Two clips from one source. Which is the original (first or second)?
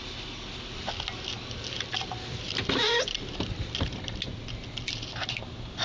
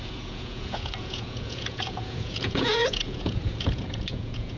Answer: first